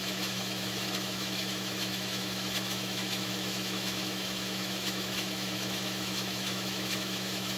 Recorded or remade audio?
remade